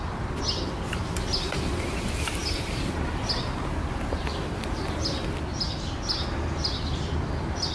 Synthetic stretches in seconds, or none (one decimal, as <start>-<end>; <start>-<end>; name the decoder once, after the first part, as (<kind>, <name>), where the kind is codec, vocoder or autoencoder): none